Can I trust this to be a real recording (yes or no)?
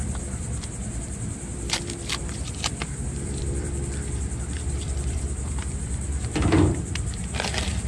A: no